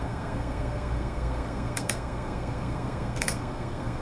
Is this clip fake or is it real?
fake